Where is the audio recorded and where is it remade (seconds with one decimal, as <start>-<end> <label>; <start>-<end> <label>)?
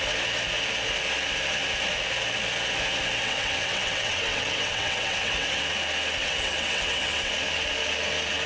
0.0-3.2 recorded; 3.2-5.6 remade; 5.6-6.2 recorded; 6.2-7.3 remade; 7.3-8.5 recorded